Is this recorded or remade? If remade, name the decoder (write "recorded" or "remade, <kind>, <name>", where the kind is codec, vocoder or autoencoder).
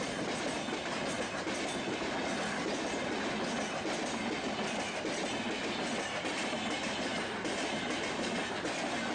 recorded